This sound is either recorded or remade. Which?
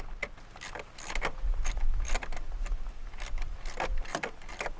recorded